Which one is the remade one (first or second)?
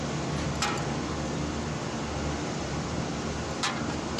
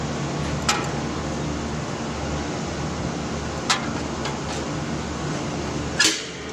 first